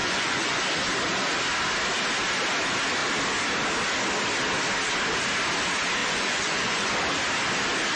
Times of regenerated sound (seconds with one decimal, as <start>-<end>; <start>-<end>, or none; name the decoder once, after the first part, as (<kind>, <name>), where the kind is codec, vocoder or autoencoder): 0.0-0.6 (vocoder, Vocos); 6.0-6.9